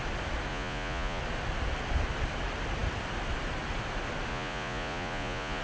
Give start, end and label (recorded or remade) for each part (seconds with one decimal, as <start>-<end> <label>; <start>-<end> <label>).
0.0-0.5 recorded; 0.5-1.2 remade; 1.2-4.3 recorded; 4.3-5.6 remade